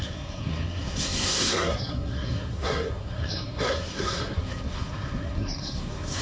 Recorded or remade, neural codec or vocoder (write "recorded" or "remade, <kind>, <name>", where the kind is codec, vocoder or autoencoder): remade, codec, SNAC